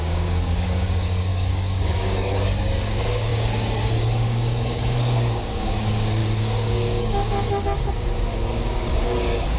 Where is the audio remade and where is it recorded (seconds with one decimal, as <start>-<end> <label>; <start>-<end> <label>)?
0.0-9.6 remade